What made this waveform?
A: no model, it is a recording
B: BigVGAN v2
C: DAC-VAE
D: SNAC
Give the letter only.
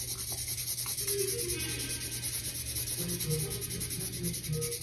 A